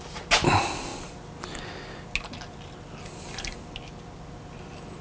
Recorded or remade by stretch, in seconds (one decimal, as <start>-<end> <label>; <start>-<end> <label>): 0.0-5.0 recorded